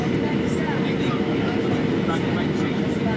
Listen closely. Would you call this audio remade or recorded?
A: recorded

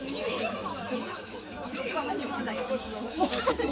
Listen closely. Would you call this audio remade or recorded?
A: remade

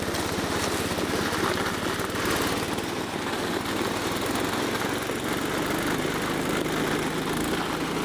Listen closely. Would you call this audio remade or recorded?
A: recorded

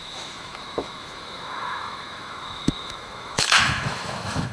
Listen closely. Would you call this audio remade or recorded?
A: remade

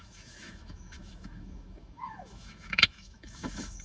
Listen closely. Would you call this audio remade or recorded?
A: remade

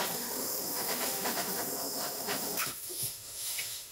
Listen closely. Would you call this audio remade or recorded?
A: remade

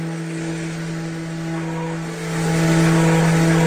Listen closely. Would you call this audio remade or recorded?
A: recorded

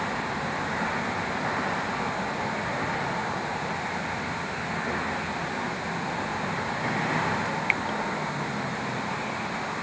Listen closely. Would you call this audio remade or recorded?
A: recorded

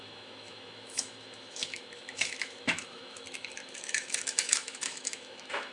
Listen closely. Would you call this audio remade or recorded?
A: remade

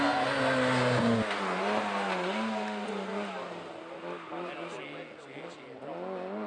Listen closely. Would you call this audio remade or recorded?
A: recorded